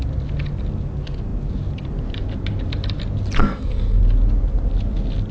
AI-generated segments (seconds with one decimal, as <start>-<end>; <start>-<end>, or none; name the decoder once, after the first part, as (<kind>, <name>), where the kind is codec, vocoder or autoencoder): 3.4-4.0 (codec, SNAC)